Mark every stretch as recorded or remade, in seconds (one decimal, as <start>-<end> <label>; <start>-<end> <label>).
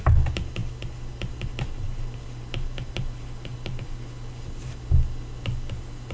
0.0-6.1 recorded